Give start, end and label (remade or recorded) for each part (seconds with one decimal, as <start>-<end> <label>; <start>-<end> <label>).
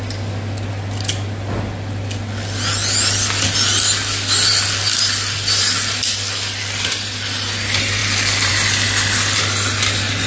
0.0-10.3 recorded